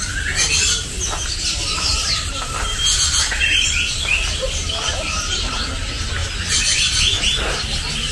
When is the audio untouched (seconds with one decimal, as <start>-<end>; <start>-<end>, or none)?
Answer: 0.0-1.9; 5.5-8.1